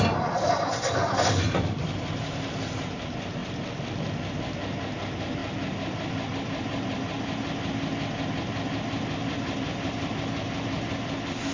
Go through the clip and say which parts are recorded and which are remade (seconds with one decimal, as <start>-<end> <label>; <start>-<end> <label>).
0.0-9.2 recorded; 9.2-10.1 remade; 10.1-11.5 recorded